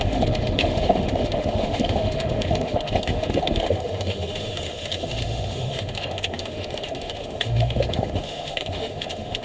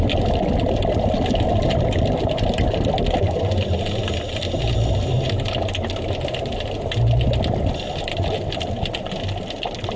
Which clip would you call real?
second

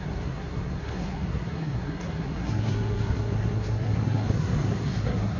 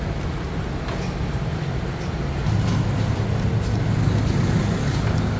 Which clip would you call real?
second